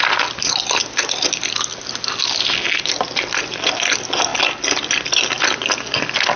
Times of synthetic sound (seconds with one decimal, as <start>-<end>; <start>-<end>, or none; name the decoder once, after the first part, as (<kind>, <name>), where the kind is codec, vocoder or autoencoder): none